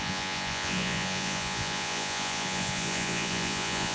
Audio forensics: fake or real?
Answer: fake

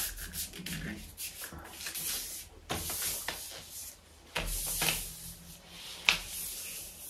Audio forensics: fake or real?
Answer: real